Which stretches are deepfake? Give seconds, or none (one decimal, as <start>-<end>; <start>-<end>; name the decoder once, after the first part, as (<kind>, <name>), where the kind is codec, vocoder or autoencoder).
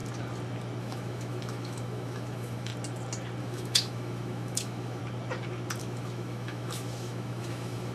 0.8-2.7 (autoencoder, DAC-VAE); 3.4-5.0; 5.8-7.9